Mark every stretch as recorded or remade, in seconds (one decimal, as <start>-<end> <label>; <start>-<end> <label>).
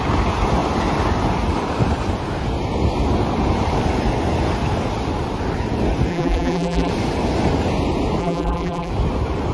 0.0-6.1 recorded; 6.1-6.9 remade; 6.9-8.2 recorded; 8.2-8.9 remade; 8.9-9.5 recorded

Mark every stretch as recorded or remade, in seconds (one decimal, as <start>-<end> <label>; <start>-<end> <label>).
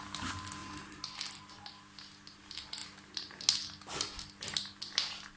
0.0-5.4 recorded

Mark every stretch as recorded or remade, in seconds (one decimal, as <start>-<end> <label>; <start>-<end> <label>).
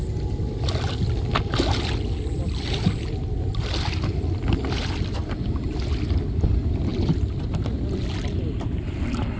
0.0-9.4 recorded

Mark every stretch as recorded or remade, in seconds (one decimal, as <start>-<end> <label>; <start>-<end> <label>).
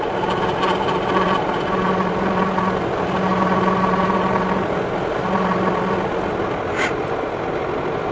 0.0-8.1 recorded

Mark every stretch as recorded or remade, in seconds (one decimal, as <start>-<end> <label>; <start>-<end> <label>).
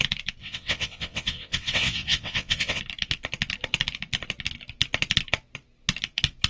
0.0-0.4 recorded; 0.4-2.8 remade; 2.8-6.5 recorded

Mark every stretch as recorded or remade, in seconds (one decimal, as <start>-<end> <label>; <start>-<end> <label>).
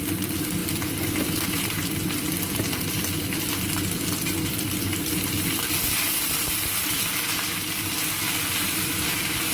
0.0-9.5 recorded